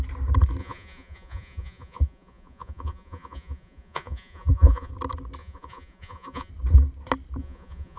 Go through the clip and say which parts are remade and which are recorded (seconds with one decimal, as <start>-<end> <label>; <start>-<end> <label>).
0.0-0.6 recorded; 0.6-4.9 remade; 4.9-5.4 recorded; 5.4-6.5 remade; 6.5-7.4 recorded; 7.4-8.0 remade